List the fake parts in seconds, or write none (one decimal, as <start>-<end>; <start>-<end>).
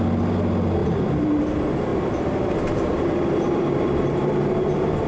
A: 0.8-1.4; 1.9-5.1